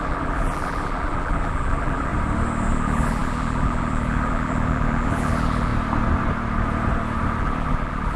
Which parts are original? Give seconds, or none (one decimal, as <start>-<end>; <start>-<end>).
2.1-2.7; 5.7-7.4